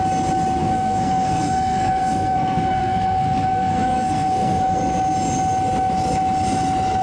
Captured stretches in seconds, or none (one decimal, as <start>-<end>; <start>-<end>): 0.0-0.6; 4.8-7.0